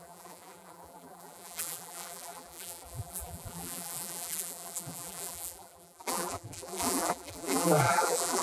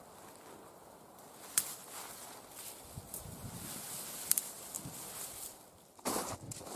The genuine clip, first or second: second